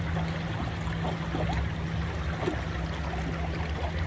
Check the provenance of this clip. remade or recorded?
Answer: recorded